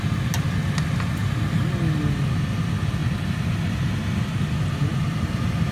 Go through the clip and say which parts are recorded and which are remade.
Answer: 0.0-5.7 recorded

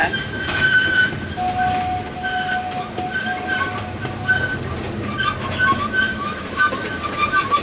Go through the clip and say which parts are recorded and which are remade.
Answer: 0.0-1.1 remade; 1.1-6.1 recorded; 6.1-6.7 remade; 6.7-7.6 recorded

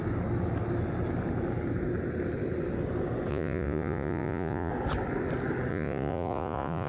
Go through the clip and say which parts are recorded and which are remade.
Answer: 0.0-3.3 recorded; 3.3-4.7 remade; 4.7-5.7 recorded; 5.7-6.9 remade

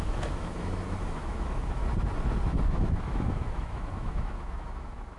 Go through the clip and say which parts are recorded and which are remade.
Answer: 0.0-1.8 remade; 1.8-2.7 recorded; 2.7-5.2 remade

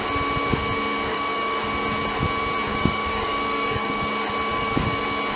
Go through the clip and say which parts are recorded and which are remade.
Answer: 0.0-1.1 recorded; 1.1-1.6 remade; 1.6-2.7 recorded; 2.7-4.1 remade; 4.1-4.5 recorded; 4.5-5.0 remade; 5.0-5.4 recorded

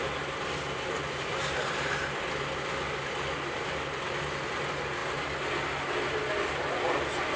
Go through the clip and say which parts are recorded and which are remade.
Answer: 0.0-7.4 recorded

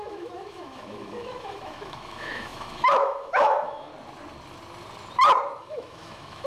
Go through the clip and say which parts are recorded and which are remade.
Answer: 0.0-3.9 remade; 3.9-5.6 recorded; 5.6-6.5 remade

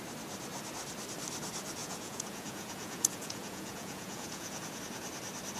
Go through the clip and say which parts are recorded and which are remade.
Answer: 0.0-1.8 recorded; 1.8-4.8 remade; 4.8-5.6 recorded